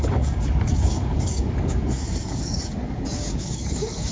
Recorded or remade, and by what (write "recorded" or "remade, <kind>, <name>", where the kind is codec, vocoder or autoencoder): remade, codec, DAC